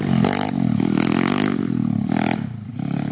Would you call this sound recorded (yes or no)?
yes